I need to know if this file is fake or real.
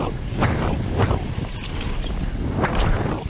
real